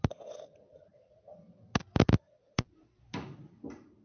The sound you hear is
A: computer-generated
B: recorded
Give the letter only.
B